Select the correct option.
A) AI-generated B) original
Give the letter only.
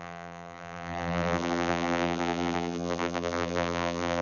A